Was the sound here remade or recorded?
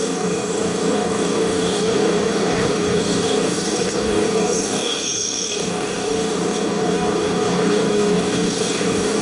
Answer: remade